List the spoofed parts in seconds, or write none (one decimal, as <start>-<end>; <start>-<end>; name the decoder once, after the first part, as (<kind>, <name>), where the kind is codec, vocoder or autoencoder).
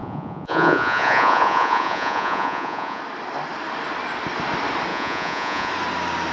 0.0-3.0 (vocoder, Vocos); 4.9-5.7